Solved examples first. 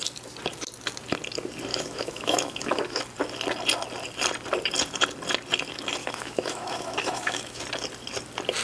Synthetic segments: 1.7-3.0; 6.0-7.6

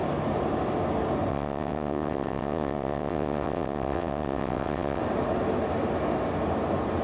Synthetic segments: 1.3-5.0

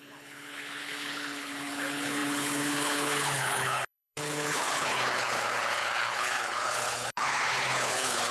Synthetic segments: 0.0-8.3